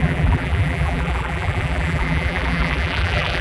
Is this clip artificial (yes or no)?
yes